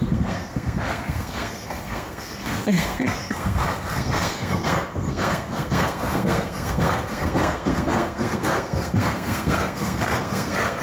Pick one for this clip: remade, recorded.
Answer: remade